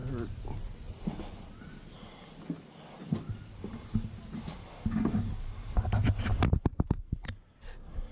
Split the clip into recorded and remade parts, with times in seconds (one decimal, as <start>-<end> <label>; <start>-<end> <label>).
0.0-8.1 recorded